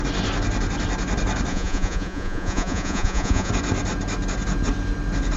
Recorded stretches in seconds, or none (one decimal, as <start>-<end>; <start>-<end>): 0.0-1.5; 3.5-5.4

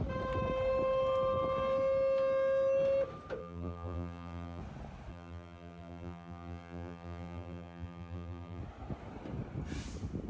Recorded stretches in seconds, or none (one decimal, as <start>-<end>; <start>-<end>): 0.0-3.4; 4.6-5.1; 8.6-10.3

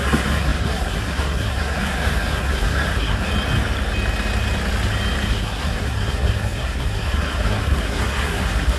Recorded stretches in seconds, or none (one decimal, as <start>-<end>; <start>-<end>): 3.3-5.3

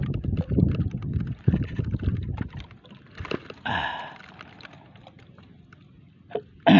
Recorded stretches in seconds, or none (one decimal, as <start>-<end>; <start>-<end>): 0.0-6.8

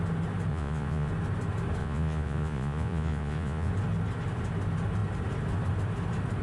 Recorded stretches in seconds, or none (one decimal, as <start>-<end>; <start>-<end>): 0.0-0.5; 1.1-1.8; 3.7-6.4

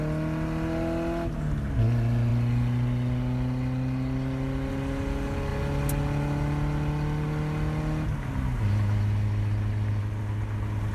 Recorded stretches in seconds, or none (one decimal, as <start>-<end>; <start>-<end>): 0.0-10.9

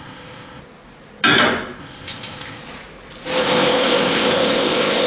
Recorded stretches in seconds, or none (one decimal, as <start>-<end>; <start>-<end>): 0.6-1.8; 2.6-3.4